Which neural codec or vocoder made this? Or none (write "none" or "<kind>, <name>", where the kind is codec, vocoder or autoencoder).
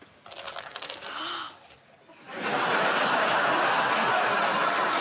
none